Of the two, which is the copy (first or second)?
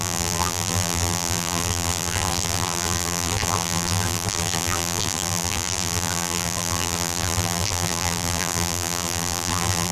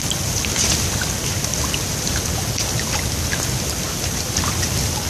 first